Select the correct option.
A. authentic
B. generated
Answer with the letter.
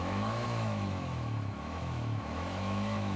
B